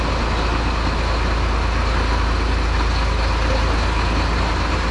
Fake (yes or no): no